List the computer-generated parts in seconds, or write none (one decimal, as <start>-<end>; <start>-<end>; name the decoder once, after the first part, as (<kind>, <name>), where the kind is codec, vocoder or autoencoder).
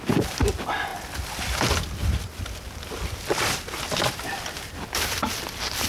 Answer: none